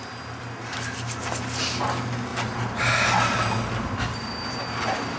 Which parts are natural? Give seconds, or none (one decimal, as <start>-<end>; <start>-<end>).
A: 0.0-5.2